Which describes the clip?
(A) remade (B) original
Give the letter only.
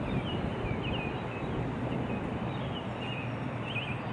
B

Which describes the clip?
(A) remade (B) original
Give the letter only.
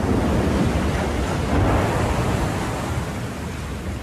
B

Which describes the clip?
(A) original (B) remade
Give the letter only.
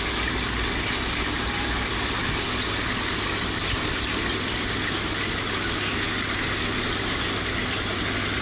A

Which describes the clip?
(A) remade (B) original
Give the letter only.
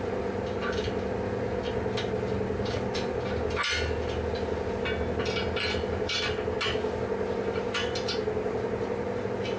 B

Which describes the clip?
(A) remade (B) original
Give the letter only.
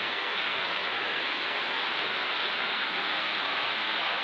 A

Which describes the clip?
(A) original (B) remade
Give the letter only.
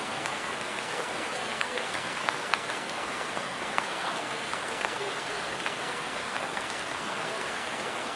B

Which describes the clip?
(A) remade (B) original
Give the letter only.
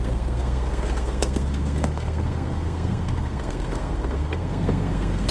A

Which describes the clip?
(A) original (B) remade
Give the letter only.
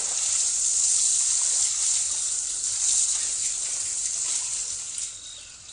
A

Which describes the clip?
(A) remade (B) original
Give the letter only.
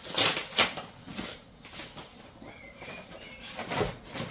B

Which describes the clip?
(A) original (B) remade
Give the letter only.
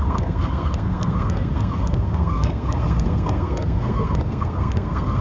B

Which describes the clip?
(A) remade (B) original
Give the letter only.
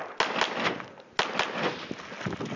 B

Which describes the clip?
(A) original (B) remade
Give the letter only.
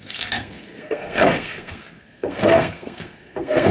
B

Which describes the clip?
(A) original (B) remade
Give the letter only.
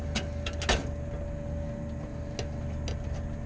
A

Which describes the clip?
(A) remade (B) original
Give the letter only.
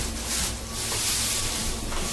B